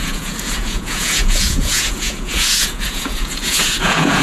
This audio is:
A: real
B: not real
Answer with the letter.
B